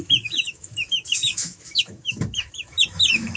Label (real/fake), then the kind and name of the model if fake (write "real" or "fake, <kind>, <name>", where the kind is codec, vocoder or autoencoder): fake, autoencoder, DAC-VAE